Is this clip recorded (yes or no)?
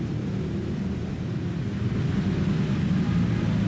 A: yes